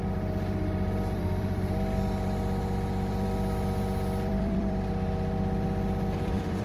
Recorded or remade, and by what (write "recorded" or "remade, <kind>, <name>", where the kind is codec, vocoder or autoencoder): remade, vocoder, BigVGAN v2